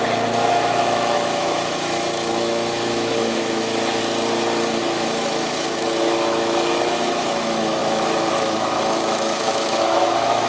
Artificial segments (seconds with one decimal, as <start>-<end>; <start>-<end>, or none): 0.0-4.0; 4.8-10.5